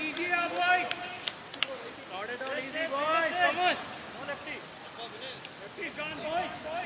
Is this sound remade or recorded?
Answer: recorded